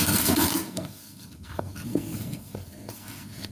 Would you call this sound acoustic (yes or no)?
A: no